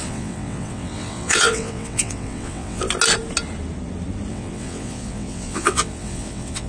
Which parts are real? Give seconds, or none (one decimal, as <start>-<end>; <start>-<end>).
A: 2.8-4.3